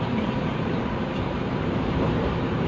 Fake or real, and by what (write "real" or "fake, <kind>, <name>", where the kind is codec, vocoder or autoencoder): fake, vocoder, BigVGAN v2